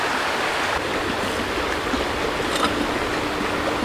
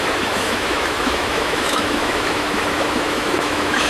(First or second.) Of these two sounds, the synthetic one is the second